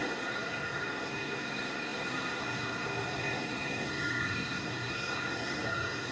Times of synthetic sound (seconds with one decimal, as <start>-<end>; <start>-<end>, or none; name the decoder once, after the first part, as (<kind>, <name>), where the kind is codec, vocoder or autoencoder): 0.0-6.1 (codec, SNAC)